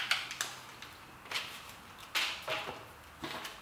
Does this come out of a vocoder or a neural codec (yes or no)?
no